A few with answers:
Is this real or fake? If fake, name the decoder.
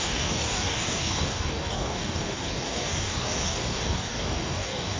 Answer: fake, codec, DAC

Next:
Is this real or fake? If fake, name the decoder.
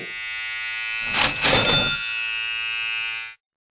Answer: real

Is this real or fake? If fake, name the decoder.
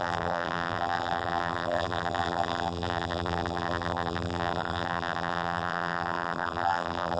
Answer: fake, vocoder, BigVGAN v2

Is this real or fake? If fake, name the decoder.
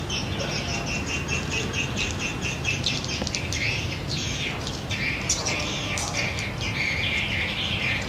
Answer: real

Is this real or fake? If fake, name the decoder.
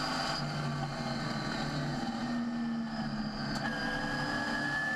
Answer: real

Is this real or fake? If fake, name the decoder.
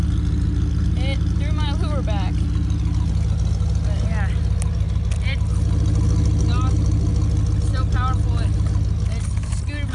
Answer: real